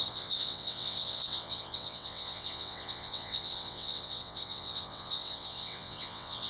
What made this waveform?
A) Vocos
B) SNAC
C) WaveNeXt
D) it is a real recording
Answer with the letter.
C